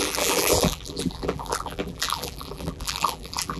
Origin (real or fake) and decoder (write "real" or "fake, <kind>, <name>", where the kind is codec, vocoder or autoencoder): fake, vocoder, BigVGAN v2